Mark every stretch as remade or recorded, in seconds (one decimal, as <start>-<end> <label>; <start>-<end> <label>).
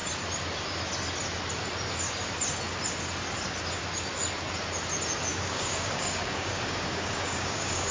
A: 0.0-5.3 recorded; 5.3-7.9 remade